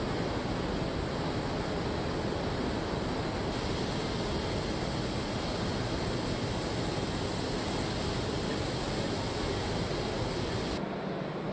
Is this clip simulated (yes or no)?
no